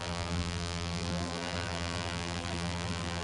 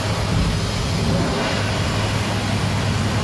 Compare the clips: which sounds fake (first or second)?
first